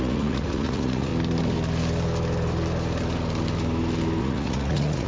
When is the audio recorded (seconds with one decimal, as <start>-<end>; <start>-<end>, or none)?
1.1-4.2